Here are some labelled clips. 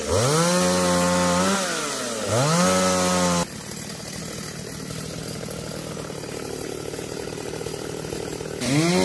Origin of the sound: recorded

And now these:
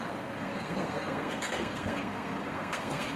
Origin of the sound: remade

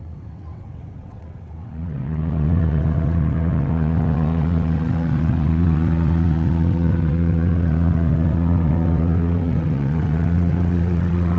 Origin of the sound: remade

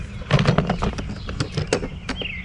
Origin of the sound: recorded